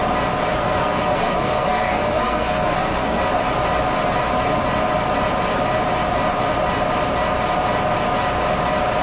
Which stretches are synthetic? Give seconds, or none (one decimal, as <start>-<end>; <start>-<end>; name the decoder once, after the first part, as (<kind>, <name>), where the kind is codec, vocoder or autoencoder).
0.6-3.2 (codec, SNAC)